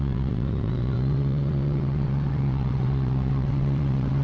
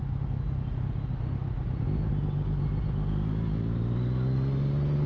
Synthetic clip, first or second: first